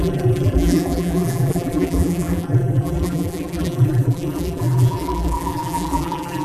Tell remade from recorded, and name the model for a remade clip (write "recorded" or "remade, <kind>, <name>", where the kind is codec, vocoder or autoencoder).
remade, vocoder, BigVGAN v2